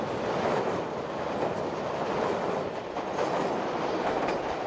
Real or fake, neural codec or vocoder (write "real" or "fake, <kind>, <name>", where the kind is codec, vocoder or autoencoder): fake, vocoder, BigVGAN v2